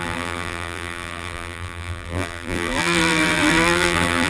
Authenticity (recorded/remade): remade